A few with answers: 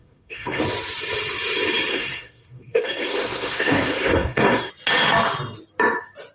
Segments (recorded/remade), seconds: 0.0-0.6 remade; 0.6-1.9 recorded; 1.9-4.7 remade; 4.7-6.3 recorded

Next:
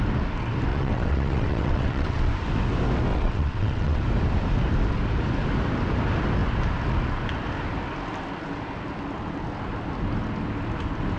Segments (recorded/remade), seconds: 0.0-0.7 recorded; 0.7-2.3 remade; 2.3-3.1 recorded; 3.1-4.0 remade; 4.0-11.2 recorded

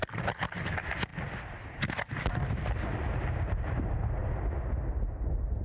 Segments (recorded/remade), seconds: 0.0-5.6 recorded

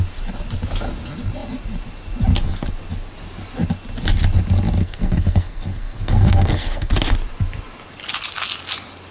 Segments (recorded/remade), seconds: 0.0-4.8 recorded; 4.8-6.9 remade; 6.9-9.1 recorded

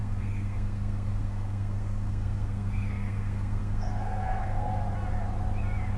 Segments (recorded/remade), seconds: 0.0-4.7 remade; 4.7-6.0 recorded